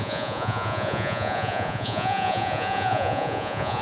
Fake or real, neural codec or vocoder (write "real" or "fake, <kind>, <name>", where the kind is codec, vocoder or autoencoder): fake, vocoder, Vocos